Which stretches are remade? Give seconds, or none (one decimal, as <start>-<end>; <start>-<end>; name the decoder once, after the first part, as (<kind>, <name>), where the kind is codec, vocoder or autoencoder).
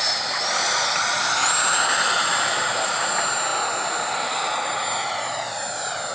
none